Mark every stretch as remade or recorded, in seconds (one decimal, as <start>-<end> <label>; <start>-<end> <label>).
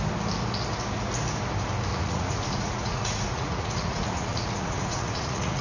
0.0-1.9 recorded; 1.9-5.6 remade